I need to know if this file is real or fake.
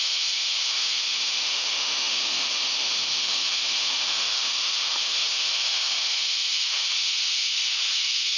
fake